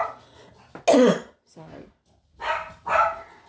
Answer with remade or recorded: recorded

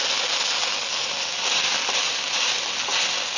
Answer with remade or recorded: recorded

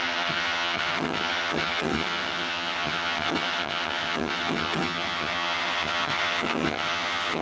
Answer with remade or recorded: remade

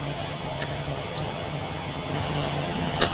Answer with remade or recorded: remade